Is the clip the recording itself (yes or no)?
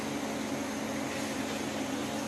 yes